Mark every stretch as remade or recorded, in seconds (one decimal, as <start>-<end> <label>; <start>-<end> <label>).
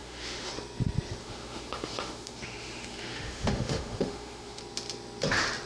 0.0-0.5 remade; 0.5-1.2 recorded; 1.2-4.6 remade; 4.6-5.7 recorded